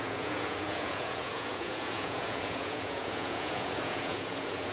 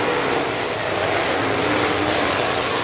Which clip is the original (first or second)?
second